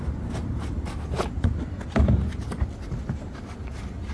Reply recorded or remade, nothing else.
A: recorded